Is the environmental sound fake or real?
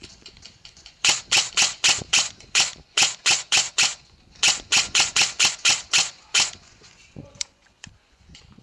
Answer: fake